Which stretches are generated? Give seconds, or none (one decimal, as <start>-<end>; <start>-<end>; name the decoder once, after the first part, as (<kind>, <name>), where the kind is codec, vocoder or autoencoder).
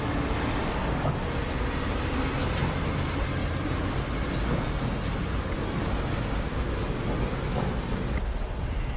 3.4-3.9 (vocoder, BigVGAN v2)